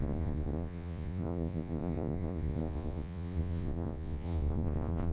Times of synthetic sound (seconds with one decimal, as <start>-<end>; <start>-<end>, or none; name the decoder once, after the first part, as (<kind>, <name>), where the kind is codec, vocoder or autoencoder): 0.0-5.1 (vocoder, Vocos)